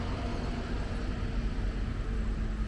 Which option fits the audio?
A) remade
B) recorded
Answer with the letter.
B